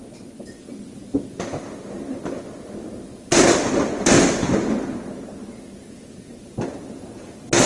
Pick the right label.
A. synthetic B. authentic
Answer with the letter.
B